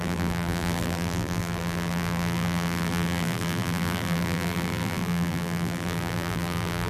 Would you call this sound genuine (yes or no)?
no